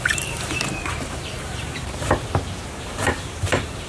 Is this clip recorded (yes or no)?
no